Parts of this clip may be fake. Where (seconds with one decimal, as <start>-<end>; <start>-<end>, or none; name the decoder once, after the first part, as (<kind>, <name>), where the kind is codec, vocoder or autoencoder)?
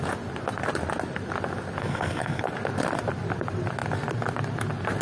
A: 1.8-2.4 (codec, SNAC)